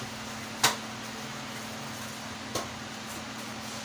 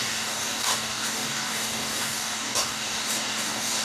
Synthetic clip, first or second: second